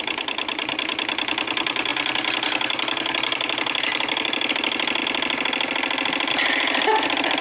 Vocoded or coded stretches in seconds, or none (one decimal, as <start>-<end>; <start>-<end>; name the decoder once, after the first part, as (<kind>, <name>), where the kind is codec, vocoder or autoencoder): none

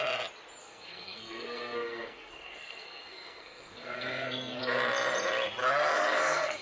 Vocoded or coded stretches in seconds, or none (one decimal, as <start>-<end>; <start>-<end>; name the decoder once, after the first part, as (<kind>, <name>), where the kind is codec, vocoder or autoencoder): 0.6-4.6 (codec, SNAC); 5.6-6.6

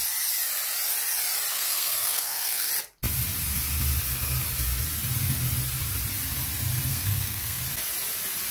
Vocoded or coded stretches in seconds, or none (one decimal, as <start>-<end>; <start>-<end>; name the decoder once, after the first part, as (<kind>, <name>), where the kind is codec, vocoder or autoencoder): 1.5-2.7 (codec, SNAC); 6.9-7.6